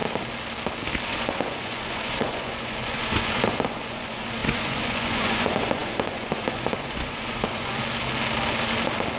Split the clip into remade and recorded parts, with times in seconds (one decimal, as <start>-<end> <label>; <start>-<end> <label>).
0.0-1.1 recorded; 1.1-7.8 remade; 7.8-9.2 recorded